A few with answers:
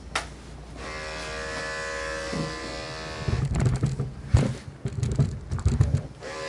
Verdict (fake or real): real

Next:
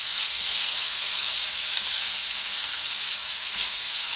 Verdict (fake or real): fake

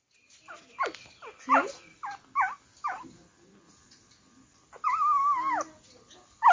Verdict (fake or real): real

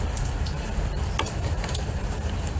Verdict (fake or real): real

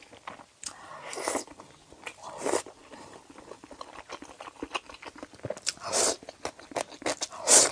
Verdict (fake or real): real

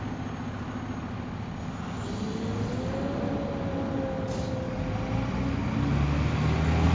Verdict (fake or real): real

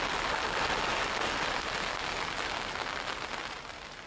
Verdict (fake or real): real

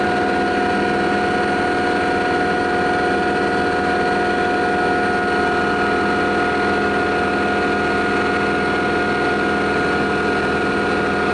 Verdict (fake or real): real